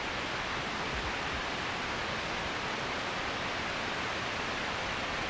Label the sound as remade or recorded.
recorded